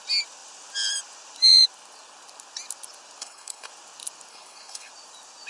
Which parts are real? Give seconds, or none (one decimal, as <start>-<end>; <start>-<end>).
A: 0.0-3.2; 3.7-4.3; 4.9-5.5